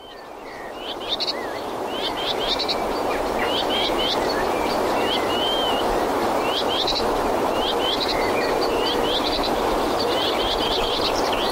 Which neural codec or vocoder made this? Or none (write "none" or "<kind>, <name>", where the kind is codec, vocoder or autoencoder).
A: vocoder, BigVGAN v2